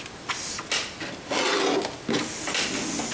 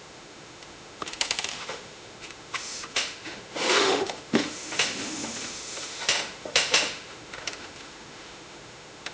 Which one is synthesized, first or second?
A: second